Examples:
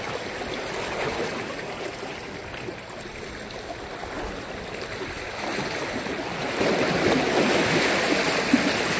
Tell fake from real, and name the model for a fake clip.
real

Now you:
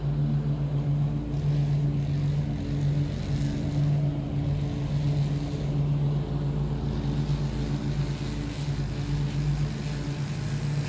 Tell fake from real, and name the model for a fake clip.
real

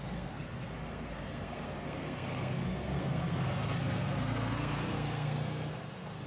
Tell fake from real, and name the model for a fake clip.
fake, codec, SNAC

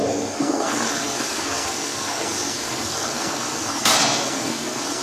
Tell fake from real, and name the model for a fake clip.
fake, codec, SNAC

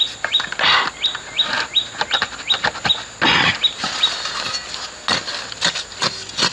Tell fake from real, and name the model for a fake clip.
real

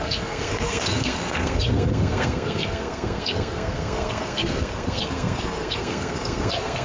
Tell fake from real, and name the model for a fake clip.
fake, codec, SNAC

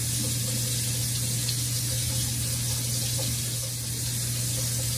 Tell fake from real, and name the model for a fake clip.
real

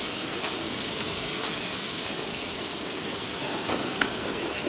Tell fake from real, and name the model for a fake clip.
fake, codec, SNAC